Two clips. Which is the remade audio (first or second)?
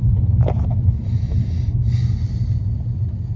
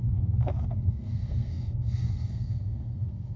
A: second